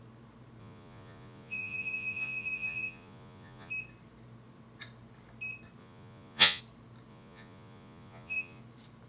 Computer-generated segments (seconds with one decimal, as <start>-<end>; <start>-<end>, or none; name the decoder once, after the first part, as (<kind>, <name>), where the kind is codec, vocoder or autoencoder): 0.6-3.7 (vocoder, Vocos); 5.8-6.6; 7.1-8.6